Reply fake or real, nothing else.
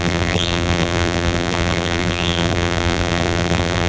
fake